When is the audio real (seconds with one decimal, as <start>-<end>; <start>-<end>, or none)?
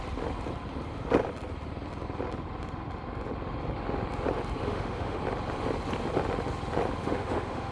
0.0-4.6; 5.2-7.0